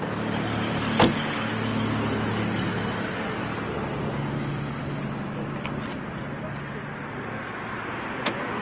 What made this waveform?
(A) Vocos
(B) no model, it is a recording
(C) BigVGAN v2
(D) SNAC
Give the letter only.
B